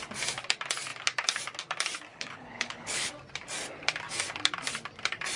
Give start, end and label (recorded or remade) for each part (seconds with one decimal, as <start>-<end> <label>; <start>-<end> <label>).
0.0-2.1 recorded; 2.1-3.1 remade; 3.1-5.4 recorded